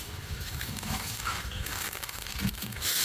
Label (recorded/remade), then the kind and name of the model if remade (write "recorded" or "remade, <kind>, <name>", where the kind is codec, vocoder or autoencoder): remade, codec, DAC